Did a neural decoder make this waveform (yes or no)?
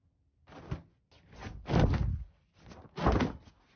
no